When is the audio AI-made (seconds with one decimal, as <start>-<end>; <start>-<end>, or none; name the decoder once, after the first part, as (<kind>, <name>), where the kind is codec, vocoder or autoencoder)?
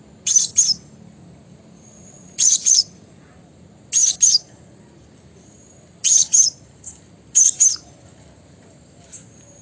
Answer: 1.9-3.3 (vocoder, Vocos)